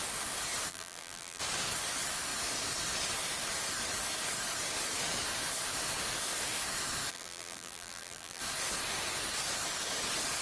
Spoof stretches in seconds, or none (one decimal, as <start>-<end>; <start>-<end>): 0.7-1.4; 7.1-8.4